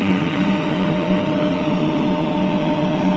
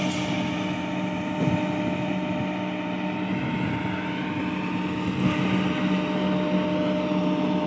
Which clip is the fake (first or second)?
first